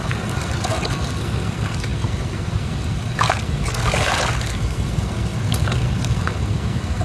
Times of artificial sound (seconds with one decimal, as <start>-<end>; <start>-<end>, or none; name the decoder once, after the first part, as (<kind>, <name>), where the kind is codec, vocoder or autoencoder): 0.0-7.0 (codec, SNAC)